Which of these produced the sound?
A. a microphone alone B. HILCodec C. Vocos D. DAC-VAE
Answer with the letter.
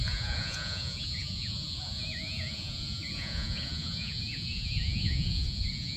C